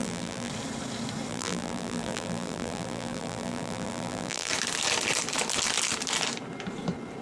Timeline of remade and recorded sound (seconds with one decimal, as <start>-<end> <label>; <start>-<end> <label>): 0.0-0.5 remade; 0.5-1.3 recorded; 1.3-4.5 remade; 4.5-7.2 recorded